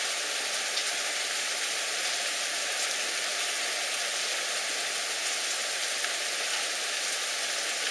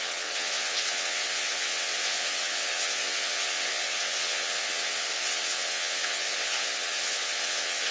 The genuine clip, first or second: first